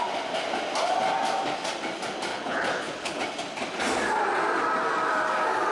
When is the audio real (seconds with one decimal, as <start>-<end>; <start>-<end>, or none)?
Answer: 0.0-2.3; 3.2-5.7